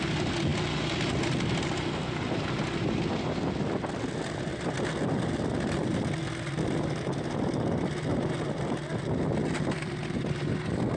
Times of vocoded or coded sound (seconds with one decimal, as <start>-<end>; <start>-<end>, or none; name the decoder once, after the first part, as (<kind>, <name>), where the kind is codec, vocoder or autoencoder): 6.2-9.8 (vocoder, BigVGAN v2)